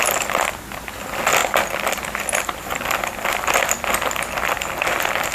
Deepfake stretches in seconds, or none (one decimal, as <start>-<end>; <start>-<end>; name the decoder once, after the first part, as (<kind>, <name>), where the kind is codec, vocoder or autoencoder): none